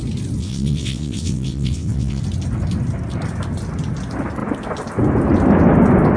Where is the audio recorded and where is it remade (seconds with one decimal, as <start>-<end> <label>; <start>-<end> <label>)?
0.0-0.4 recorded; 0.4-2.2 remade; 2.2-6.2 recorded